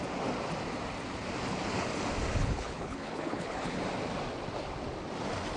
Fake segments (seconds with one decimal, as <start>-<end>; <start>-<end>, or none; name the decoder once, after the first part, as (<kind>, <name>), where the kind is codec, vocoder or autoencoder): 2.4-3.8 (codec, HILCodec)